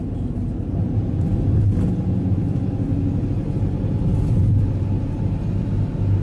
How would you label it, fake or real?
real